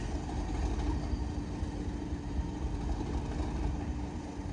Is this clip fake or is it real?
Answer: real